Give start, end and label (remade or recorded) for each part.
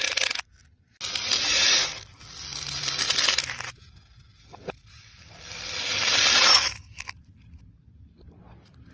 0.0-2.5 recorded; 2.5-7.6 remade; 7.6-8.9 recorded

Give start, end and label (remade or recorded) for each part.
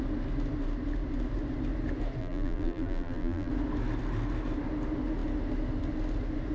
0.0-2.2 recorded; 2.2-3.5 remade; 3.5-6.5 recorded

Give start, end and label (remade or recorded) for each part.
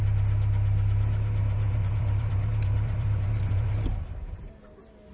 0.0-1.4 recorded; 1.4-4.5 remade; 4.5-5.1 recorded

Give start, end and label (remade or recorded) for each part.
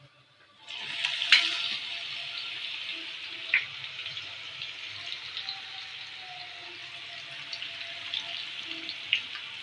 0.0-3.4 recorded; 3.4-4.6 remade; 4.6-9.6 recorded